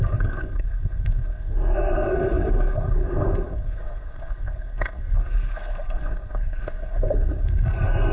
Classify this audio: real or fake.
fake